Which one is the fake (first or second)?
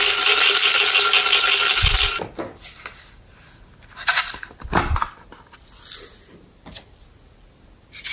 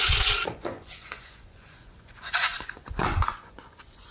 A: second